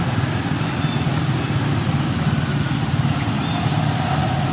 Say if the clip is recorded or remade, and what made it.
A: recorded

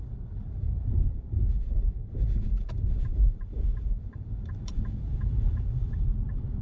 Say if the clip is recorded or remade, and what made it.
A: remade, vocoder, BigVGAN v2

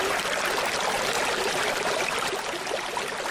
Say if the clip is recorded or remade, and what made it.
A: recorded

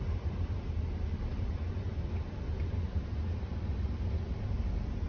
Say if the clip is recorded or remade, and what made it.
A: recorded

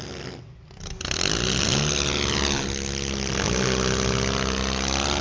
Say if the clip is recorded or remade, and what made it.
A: recorded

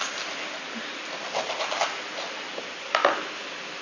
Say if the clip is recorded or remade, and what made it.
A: recorded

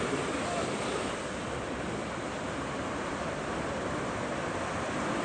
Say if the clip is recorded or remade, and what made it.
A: remade, vocoder, BigVGAN v2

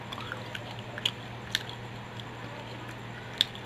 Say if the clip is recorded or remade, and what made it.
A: recorded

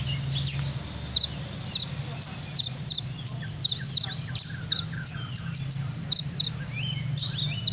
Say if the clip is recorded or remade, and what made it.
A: recorded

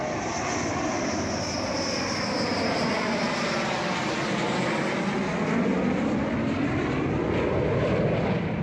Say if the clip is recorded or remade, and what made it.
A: recorded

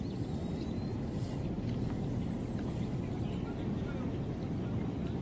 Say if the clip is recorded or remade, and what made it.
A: recorded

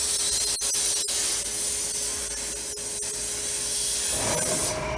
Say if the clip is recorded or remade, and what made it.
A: recorded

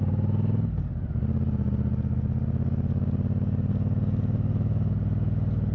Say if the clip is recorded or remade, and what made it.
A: recorded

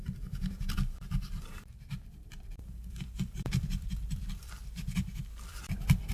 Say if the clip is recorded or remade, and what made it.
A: remade, vocoder, BigVGAN v2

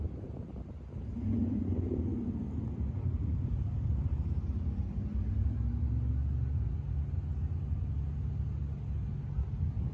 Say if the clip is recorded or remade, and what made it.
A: recorded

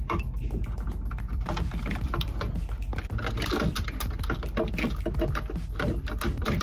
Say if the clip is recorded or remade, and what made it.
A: recorded